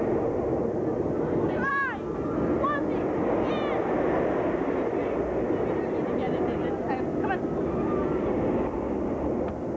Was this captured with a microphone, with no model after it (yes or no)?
yes